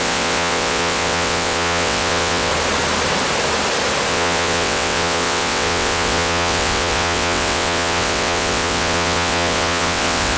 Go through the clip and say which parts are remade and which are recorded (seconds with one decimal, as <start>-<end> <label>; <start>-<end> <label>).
0.0-2.5 remade; 2.5-4.1 recorded; 4.1-10.4 remade